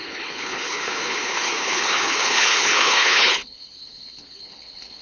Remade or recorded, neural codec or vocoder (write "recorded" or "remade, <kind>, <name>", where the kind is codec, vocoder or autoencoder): remade, codec, HILCodec